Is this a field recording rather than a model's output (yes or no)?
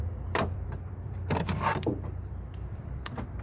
no